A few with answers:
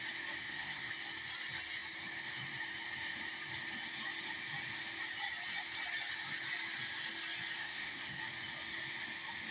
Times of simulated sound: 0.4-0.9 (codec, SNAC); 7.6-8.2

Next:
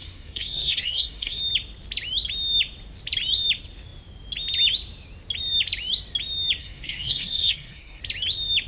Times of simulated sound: 0.0-1.4 (codec, SNAC); 6.6-8.0

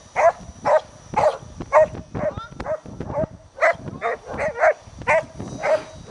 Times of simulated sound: none

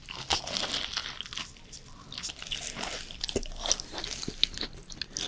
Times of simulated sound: none

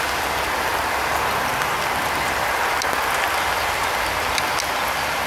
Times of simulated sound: none